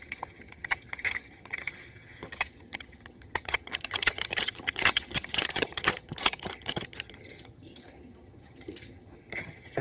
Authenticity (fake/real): fake